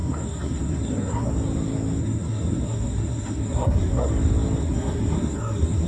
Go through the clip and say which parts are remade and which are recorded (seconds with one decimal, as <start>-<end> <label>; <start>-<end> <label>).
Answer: 0.0-1.3 remade; 1.3-2.0 recorded; 2.0-4.1 remade; 4.1-4.6 recorded; 4.6-5.9 remade

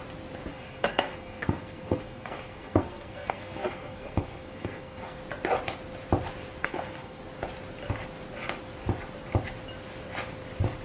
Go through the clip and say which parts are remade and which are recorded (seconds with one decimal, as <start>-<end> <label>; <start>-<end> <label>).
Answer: 0.0-0.5 recorded; 0.5-5.2 remade; 5.2-6.6 recorded; 6.6-7.2 remade; 7.2-10.8 recorded

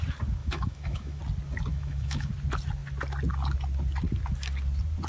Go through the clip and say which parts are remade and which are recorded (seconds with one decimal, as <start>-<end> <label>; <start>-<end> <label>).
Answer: 0.0-0.4 recorded; 0.4-1.2 remade; 1.2-1.7 recorded; 1.7-2.3 remade; 2.3-5.1 recorded

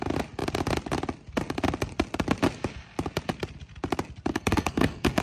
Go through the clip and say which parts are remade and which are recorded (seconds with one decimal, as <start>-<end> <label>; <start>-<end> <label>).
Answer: 0.0-4.3 recorded; 4.3-5.2 remade